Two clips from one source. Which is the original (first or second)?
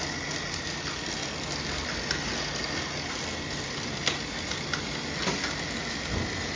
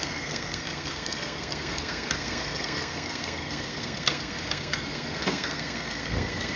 first